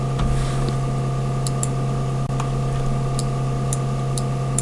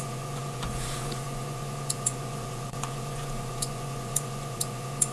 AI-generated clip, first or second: second